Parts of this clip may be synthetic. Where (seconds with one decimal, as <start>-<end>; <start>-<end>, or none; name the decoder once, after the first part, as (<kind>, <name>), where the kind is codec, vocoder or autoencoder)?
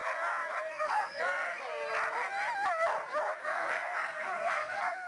0.7-1.5 (codec, SNAC); 3.4-5.1